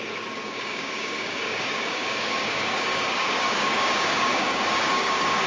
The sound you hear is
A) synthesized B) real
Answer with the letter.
A